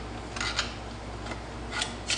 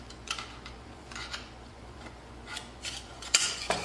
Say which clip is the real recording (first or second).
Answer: first